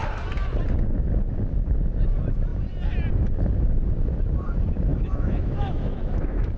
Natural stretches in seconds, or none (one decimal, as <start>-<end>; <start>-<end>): 0.0-4.9